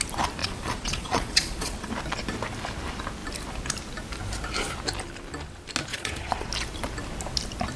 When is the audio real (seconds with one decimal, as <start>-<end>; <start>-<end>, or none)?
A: 0.0-0.4; 1.9-5.9; 6.5-7.8